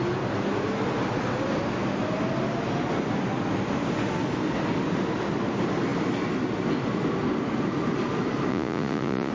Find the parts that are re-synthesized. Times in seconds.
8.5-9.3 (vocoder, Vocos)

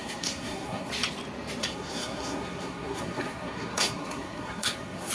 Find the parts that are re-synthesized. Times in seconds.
0.0-0.9 (codec, SNAC); 1.6-5.1